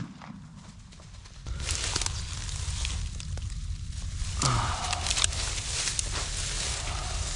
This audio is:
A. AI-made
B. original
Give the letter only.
B